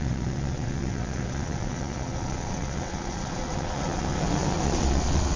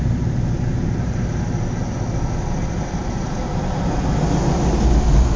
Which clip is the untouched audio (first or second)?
second